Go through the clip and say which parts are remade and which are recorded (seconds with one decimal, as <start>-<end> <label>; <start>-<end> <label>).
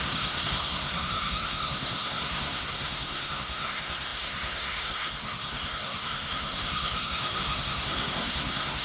0.0-8.8 remade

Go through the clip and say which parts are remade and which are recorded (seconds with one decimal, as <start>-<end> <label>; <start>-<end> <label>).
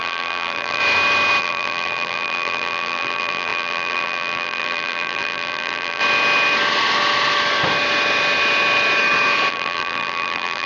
0.0-0.8 remade; 0.8-1.4 recorded; 1.4-6.0 remade; 6.0-9.5 recorded; 9.5-10.7 remade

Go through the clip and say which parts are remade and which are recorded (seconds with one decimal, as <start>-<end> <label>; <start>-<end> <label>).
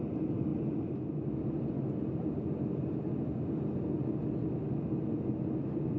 0.0-6.0 recorded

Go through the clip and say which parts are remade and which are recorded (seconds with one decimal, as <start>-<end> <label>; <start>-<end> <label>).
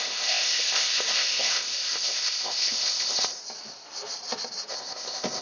0.0-3.4 remade; 3.4-4.7 recorded; 4.7-5.4 remade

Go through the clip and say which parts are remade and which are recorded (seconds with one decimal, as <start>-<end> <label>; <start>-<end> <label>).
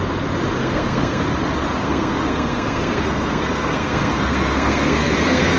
0.0-0.6 recorded; 0.6-1.2 remade; 1.2-1.8 recorded; 1.8-5.6 remade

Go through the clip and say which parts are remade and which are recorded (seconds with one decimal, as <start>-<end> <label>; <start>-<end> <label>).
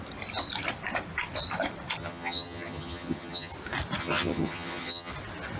0.0-2.0 recorded; 2.0-3.5 remade; 3.5-4.0 recorded; 4.0-5.1 remade; 5.1-5.6 recorded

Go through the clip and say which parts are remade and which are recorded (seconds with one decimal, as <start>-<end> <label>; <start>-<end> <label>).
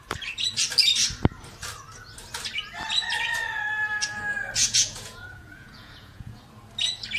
0.0-4.6 recorded; 4.6-6.4 remade; 6.4-7.2 recorded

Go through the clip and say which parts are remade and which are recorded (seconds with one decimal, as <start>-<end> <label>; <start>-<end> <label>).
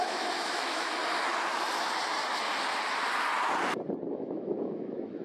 0.0-1.0 remade; 1.0-4.1 recorded; 4.1-5.2 remade